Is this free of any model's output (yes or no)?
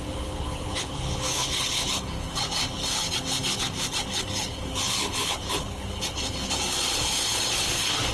no